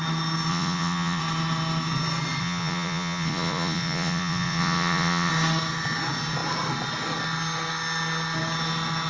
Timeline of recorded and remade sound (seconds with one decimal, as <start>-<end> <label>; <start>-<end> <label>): 0.0-0.5 recorded; 0.5-1.2 remade; 1.2-2.4 recorded; 2.4-5.3 remade; 5.3-9.1 recorded